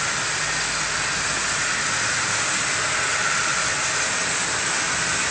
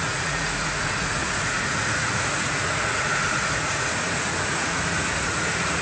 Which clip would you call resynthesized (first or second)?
second